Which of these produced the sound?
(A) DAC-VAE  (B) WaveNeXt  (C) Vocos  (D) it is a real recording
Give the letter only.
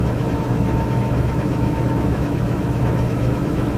A